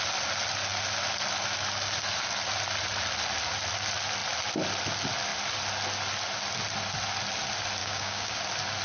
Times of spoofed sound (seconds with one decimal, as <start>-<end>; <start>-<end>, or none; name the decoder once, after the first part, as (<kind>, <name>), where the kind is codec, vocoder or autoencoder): 7.8-8.4 (codec, DAC)